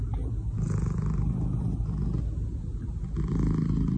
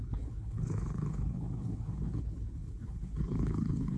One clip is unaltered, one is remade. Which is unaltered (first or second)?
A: first